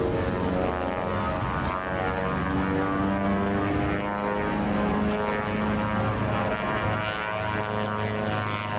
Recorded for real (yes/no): yes